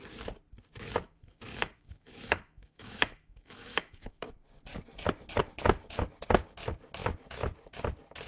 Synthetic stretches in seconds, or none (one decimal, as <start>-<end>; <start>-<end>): 0.7-4.3